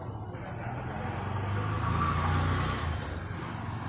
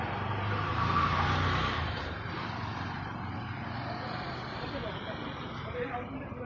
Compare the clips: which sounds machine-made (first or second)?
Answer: second